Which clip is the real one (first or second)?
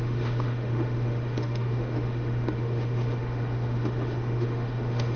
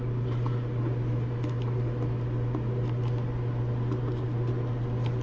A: second